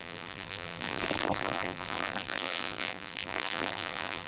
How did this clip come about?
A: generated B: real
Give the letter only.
A